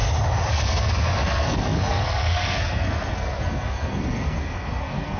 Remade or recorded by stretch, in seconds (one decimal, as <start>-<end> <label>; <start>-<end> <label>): 0.0-0.5 recorded; 0.5-5.2 remade